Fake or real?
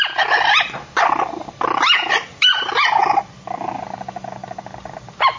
real